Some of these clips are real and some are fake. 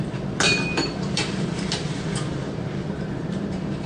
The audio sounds fake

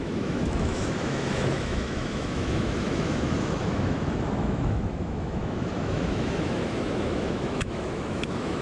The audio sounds fake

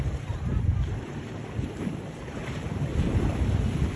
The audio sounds fake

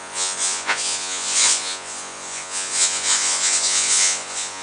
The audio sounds fake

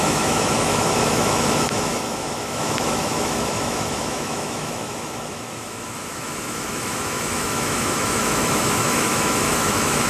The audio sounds fake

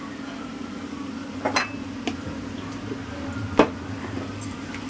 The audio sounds real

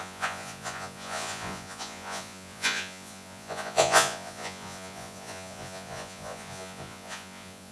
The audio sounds fake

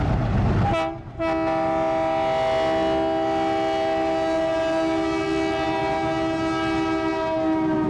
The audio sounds real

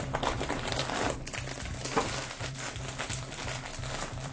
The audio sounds real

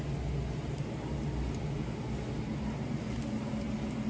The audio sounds real